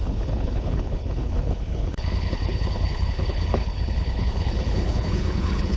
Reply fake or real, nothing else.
fake